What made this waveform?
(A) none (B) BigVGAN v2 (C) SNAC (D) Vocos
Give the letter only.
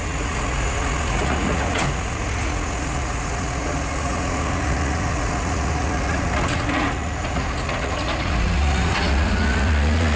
D